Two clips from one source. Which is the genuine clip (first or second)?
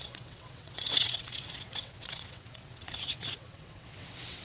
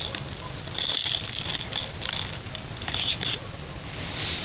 second